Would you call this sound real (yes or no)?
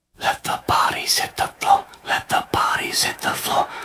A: no